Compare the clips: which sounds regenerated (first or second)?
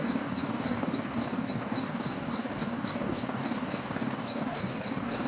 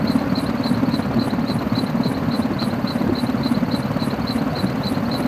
first